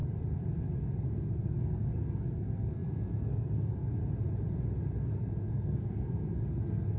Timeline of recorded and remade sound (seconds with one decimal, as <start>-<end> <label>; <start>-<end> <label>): 0.0-1.0 recorded; 1.0-3.9 remade; 3.9-5.0 recorded; 5.0-7.0 remade

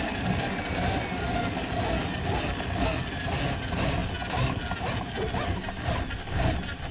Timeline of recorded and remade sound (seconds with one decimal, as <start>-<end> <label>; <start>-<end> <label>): 0.0-6.9 recorded